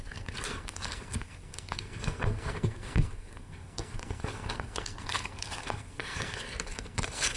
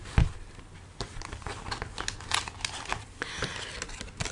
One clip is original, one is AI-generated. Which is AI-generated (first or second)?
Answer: first